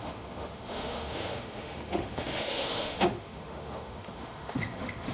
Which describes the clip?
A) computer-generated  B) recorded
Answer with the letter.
A